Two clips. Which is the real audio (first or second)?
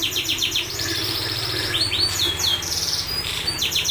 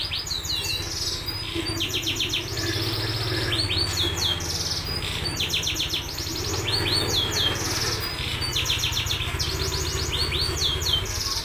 second